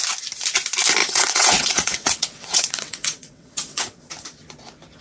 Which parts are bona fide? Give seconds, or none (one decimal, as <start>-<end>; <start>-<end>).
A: 0.0-1.0; 4.0-5.0